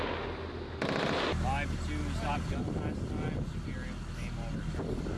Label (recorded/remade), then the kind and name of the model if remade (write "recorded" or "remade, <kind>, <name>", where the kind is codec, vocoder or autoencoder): recorded